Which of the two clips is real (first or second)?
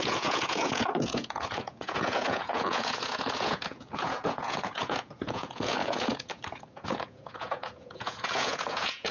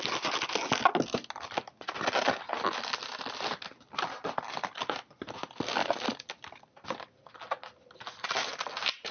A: second